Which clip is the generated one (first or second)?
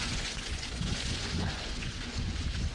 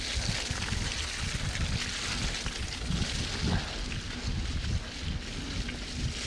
first